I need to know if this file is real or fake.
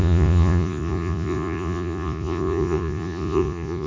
fake